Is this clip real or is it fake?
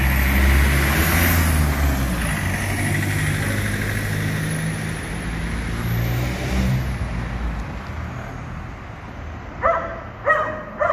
real